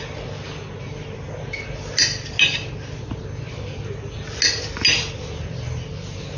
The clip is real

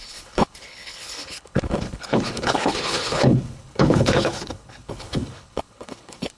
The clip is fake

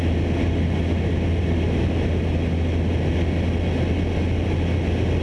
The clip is real